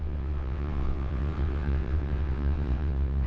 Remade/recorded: remade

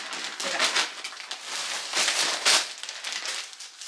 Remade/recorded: recorded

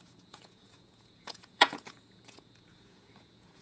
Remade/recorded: remade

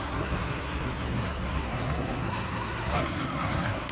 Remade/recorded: remade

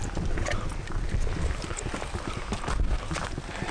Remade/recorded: recorded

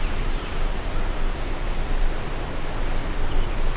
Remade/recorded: recorded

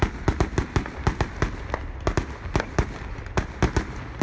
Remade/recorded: recorded